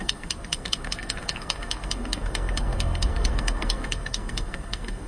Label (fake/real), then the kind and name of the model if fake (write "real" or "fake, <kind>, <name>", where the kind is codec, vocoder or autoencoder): fake, codec, SNAC